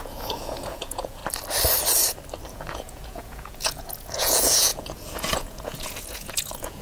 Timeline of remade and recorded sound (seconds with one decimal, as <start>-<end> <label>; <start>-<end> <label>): 0.0-1.2 remade; 1.2-2.5 recorded; 2.5-6.8 remade

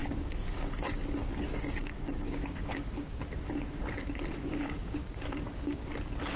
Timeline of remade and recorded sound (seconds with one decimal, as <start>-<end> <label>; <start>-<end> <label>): 0.0-0.7 remade; 0.7-1.2 recorded; 1.2-3.2 remade; 3.2-4.4 recorded; 4.4-5.9 remade; 5.9-6.4 recorded

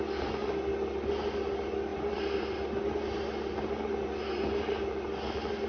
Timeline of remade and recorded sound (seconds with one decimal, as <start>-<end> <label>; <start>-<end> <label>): 0.0-5.7 recorded

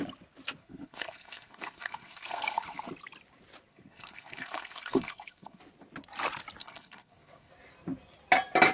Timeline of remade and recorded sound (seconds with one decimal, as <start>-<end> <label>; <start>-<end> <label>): 0.0-0.6 recorded; 0.6-2.9 remade; 2.9-3.7 recorded; 3.7-5.6 remade; 5.6-6.6 recorded; 6.6-7.5 remade; 7.5-8.7 recorded

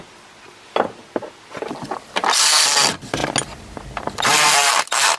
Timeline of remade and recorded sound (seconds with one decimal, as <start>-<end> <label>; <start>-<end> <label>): 0.0-5.2 recorded